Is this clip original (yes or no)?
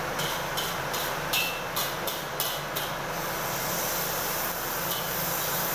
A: yes